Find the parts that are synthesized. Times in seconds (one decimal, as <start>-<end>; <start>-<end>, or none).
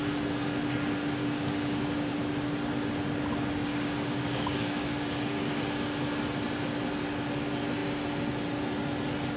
1.2-2.1; 3.7-5.6